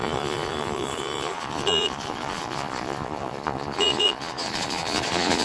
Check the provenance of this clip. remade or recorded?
remade